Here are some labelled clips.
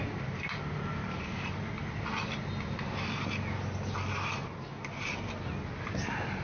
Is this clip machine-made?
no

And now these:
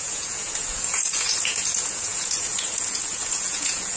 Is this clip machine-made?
yes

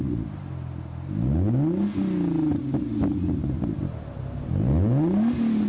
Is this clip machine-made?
no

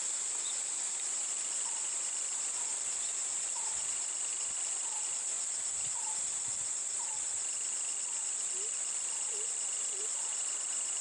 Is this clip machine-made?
yes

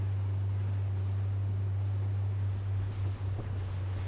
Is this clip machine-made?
no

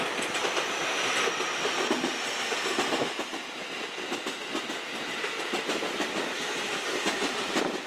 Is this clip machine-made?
no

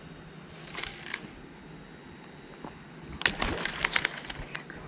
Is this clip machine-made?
no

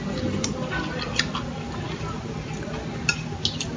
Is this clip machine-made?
no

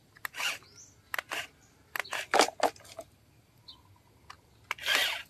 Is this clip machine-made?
no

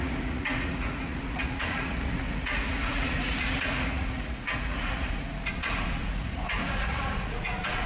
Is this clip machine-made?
yes